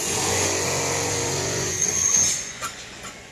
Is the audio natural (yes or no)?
no